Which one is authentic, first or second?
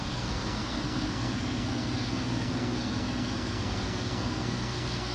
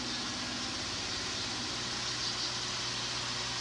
second